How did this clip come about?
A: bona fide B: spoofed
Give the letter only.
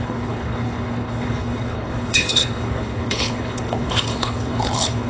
B